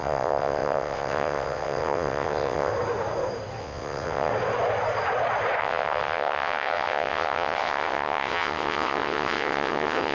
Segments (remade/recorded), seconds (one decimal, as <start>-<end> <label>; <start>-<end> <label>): 0.0-2.7 remade; 2.7-3.6 recorded; 3.6-4.3 remade; 4.3-5.6 recorded; 5.6-10.1 remade

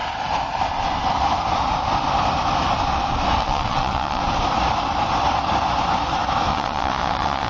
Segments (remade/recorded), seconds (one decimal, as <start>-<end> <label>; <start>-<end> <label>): 0.0-3.4 recorded; 3.4-4.2 remade; 4.2-6.5 recorded; 6.5-7.5 remade

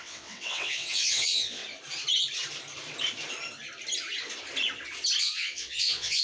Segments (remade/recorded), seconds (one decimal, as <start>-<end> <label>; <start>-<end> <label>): 0.0-1.6 remade; 1.6-5.2 recorded; 5.2-6.2 remade

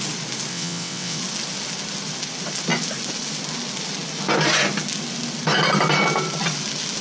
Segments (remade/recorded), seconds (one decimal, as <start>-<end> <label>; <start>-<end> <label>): 0.0-0.5 recorded; 0.5-1.2 remade; 1.2-7.0 recorded